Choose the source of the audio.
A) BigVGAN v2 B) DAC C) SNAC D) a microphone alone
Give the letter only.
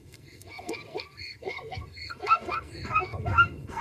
C